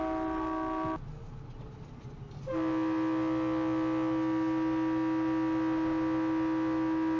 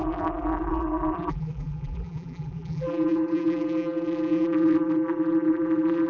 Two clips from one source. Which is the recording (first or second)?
first